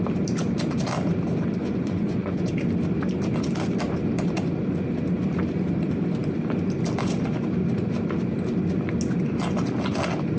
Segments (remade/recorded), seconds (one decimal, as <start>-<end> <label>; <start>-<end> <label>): 0.0-1.6 recorded; 1.6-2.5 remade; 2.5-10.4 recorded